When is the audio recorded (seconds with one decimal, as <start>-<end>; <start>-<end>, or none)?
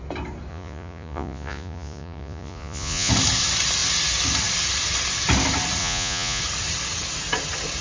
0.0-0.5; 3.1-5.8; 6.4-7.8